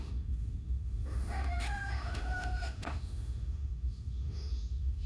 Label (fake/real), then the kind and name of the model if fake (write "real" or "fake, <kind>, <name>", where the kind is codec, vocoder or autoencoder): fake, autoencoder, DAC-VAE